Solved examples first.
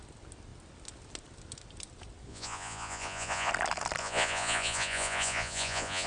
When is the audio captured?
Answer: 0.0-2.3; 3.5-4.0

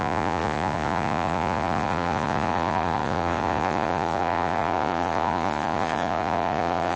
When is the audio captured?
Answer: none

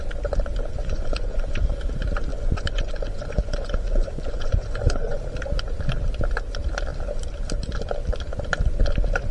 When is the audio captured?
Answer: 0.0-0.8; 1.7-2.3; 5.2-9.3

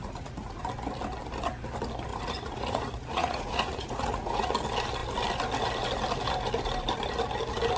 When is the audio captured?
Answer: 0.6-2.1; 4.5-7.8